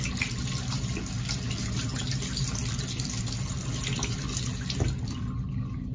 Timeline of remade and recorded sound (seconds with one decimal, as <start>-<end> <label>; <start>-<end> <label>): 0.0-5.9 recorded